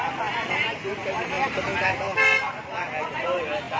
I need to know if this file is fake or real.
real